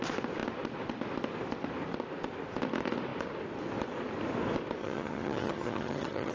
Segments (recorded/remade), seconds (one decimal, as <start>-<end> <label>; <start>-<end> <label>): 0.0-4.8 recorded; 4.8-6.3 remade